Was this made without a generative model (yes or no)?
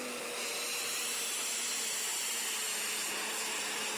yes